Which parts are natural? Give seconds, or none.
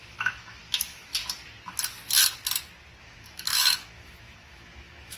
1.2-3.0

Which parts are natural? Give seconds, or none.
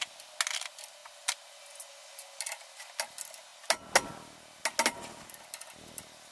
0.0-6.3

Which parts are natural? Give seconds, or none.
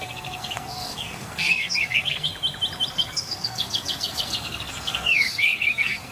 2.3-2.9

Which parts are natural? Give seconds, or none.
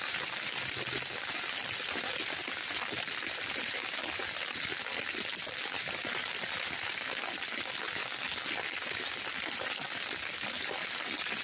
0.0-11.4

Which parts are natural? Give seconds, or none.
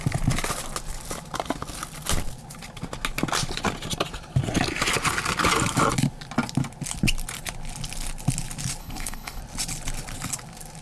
0.0-8.8; 9.4-10.8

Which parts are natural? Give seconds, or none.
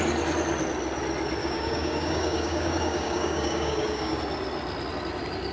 0.0-1.4; 4.2-5.5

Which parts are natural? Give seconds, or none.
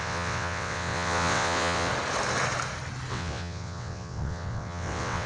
1.9-3.1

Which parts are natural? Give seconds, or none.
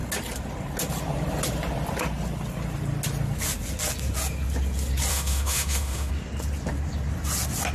0.0-5.1; 6.1-7.7